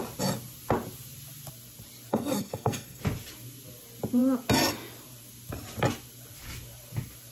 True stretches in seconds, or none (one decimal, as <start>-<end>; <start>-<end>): 0.0-2.1; 3.0-7.3